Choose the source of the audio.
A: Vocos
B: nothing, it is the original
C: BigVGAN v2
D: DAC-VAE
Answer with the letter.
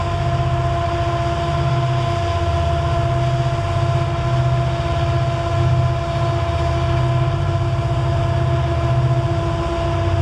B